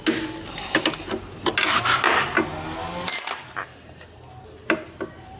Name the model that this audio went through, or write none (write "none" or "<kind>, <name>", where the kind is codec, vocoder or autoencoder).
none